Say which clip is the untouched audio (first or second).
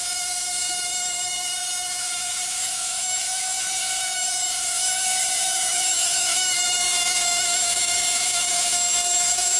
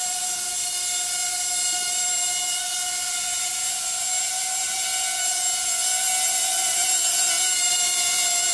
second